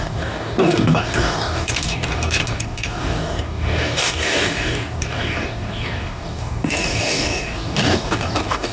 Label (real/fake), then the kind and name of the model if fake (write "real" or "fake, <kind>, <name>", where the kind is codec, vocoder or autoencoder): fake, codec, DAC